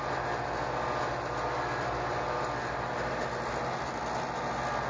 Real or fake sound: real